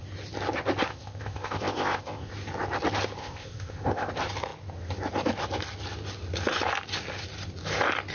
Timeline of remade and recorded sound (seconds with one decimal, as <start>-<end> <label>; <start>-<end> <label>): 0.0-0.9 recorded; 0.9-2.3 remade; 2.3-3.2 recorded; 3.2-4.1 remade; 4.1-8.1 recorded